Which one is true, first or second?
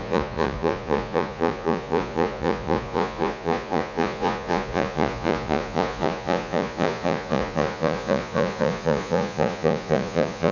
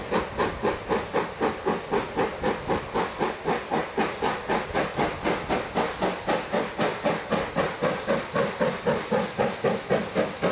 second